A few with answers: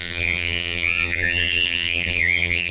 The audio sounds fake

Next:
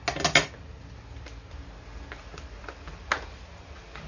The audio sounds real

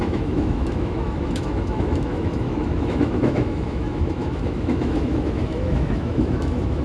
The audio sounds fake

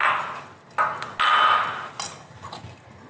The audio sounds real